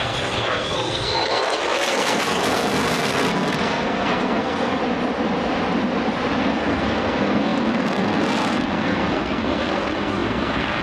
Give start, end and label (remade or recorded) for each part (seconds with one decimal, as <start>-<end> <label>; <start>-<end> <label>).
0.0-4.8 remade; 4.8-6.4 recorded; 6.4-10.8 remade